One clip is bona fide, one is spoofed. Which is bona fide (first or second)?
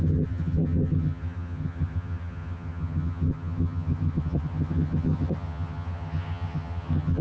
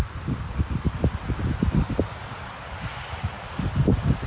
second